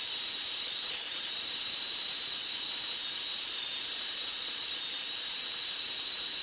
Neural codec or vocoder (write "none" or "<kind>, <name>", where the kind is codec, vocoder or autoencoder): vocoder, BigVGAN v2